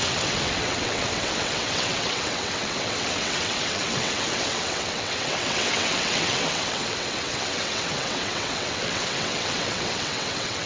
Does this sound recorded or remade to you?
remade